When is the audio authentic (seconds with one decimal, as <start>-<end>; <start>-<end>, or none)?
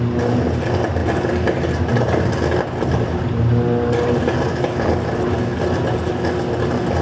0.0-7.0